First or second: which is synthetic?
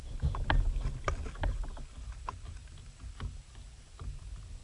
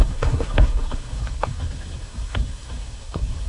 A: second